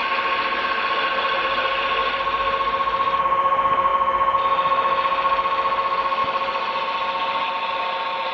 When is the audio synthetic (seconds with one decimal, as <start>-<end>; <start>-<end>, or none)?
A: 2.0-3.2; 6.2-7.7